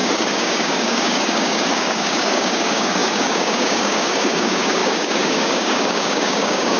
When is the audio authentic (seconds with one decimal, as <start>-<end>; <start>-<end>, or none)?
none